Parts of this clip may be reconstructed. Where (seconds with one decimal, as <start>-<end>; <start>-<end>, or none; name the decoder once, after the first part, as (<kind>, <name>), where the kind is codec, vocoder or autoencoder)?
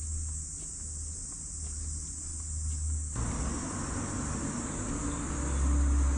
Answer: none